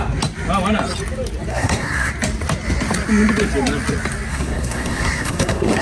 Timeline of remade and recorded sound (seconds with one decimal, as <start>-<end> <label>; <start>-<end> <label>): 0.0-1.5 recorded; 1.5-2.1 remade; 2.1-4.3 recorded; 4.3-5.8 remade